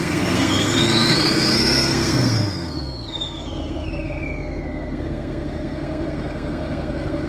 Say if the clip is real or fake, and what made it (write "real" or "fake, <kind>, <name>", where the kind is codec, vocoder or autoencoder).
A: fake, codec, SNAC